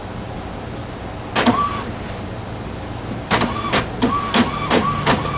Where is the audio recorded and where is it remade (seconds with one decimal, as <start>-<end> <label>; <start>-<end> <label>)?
0.0-5.4 recorded